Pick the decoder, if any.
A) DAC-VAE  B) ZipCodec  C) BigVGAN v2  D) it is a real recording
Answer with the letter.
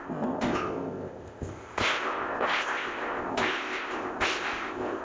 B